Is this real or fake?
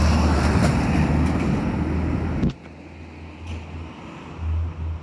real